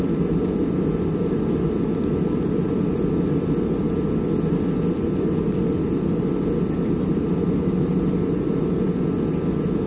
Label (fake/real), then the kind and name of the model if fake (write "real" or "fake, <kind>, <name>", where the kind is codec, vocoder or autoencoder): real